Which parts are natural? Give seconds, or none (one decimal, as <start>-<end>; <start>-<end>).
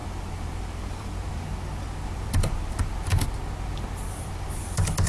3.1-4.1